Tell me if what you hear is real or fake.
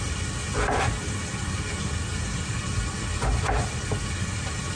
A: real